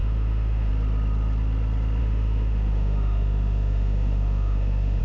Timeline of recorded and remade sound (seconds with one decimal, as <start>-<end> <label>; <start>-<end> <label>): 0.0-0.7 remade; 0.7-2.0 recorded; 2.0-5.0 remade